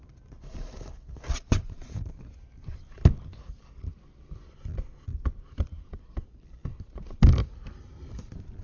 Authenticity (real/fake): real